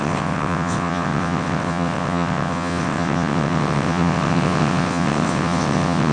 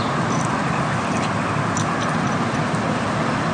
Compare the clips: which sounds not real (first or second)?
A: first